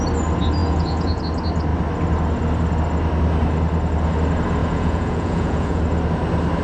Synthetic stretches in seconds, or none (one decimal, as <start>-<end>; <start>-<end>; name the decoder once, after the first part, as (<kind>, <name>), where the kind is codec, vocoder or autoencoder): 0.6-1.2 (vocoder, Vocos); 4.6-5.8